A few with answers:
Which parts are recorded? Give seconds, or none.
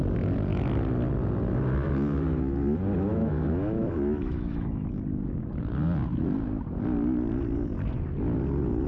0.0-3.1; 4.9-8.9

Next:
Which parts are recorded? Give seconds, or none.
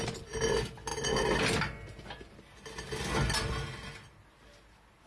0.0-5.1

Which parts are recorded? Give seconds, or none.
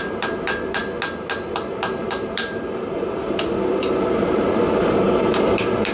0.8-1.5; 3.2-3.7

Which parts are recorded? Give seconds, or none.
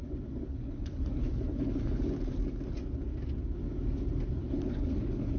0.0-0.5; 2.0-4.4